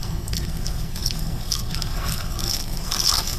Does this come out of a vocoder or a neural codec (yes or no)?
yes